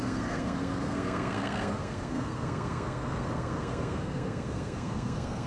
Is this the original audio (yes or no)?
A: no